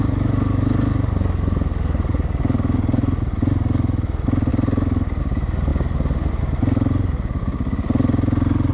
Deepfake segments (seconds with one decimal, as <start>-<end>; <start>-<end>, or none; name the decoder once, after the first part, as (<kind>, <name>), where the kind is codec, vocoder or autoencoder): none